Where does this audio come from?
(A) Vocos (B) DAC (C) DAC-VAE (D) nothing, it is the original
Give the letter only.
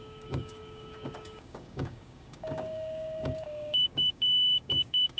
B